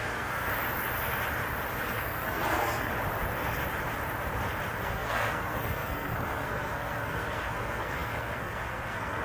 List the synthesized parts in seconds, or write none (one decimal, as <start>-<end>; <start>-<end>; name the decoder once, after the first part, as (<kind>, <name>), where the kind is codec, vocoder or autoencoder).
0.0-0.5 (codec, SNAC); 1.8-2.9; 4.8-9.2